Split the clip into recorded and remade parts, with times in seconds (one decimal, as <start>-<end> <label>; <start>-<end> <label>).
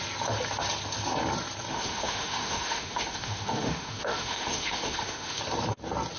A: 0.0-1.7 recorded; 1.7-5.4 remade; 5.4-6.2 recorded